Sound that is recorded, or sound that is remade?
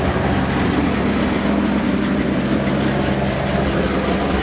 recorded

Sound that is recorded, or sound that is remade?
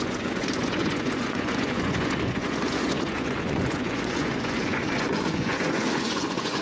remade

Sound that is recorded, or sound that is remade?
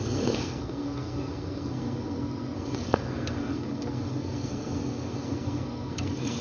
remade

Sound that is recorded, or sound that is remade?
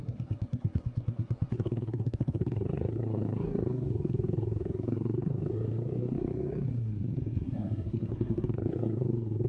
remade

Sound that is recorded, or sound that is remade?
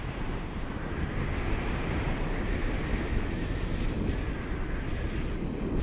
recorded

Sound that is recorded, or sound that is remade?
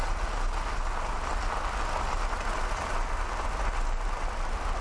recorded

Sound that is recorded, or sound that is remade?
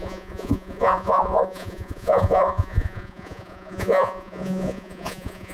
remade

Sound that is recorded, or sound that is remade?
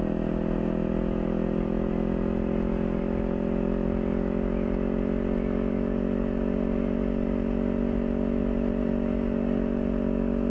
recorded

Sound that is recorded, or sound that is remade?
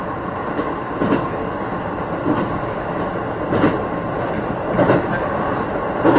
recorded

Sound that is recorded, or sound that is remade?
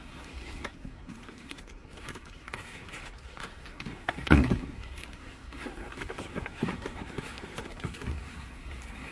remade